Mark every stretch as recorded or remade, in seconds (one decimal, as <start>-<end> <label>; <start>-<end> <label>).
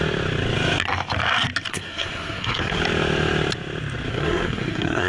0.0-1.7 recorded; 1.7-2.8 remade; 2.8-4.1 recorded; 4.1-5.1 remade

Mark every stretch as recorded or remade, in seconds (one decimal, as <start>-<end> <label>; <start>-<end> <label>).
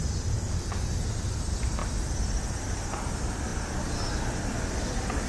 0.0-5.3 recorded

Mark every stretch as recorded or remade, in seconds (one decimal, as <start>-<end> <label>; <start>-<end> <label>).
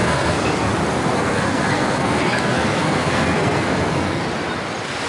0.0-0.7 remade; 0.7-1.1 recorded; 1.1-4.2 remade; 4.2-5.1 recorded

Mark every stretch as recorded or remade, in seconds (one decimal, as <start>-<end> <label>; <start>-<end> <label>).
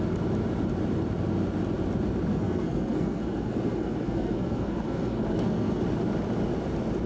0.0-2.3 recorded; 2.3-5.8 remade; 5.8-7.1 recorded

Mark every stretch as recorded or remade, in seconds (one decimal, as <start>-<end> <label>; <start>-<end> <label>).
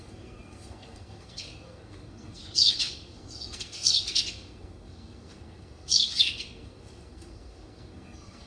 0.0-8.5 remade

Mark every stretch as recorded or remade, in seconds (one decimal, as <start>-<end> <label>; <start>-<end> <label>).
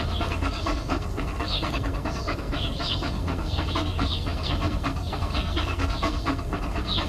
0.0-7.1 remade